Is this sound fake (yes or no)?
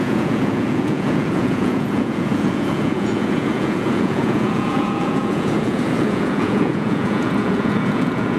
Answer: yes